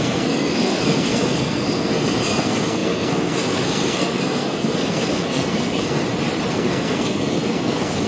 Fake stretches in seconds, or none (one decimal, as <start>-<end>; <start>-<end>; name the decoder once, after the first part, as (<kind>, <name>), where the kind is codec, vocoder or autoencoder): 0.0-6.0 (codec, SNAC); 6.5-8.1